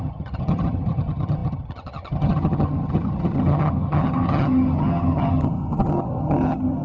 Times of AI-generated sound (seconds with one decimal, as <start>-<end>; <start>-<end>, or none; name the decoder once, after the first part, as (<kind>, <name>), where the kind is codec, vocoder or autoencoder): 0.0-6.8 (vocoder, HiFi-GAN)